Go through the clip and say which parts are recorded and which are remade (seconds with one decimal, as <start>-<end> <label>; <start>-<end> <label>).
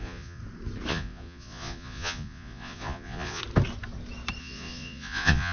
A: 0.0-0.4 remade; 0.4-0.9 recorded; 0.9-3.4 remade; 3.4-4.4 recorded; 4.4-5.5 remade